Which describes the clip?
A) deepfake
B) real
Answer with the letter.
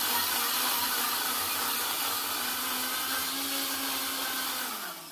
B